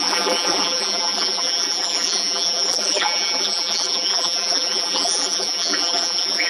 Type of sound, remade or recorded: remade